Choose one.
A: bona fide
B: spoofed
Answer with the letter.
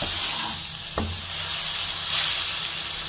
A